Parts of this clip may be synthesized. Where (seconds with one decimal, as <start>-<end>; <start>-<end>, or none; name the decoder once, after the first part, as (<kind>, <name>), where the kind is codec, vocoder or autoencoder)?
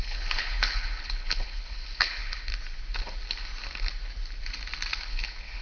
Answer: 0.0-2.5 (codec, HILCodec); 5.0-5.6